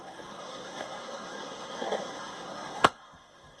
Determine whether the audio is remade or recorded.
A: remade